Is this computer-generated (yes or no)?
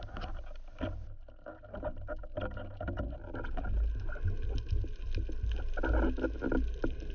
no